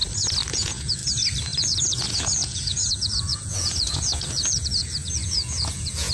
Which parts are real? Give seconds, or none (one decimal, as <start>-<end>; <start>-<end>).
0.0-0.5; 1.0-1.6